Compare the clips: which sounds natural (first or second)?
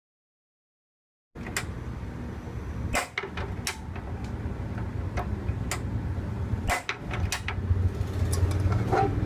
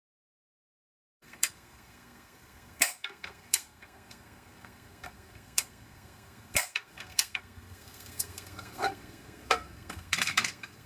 first